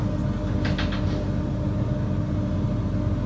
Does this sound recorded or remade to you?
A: recorded